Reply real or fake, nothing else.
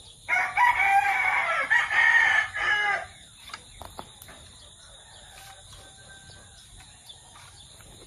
real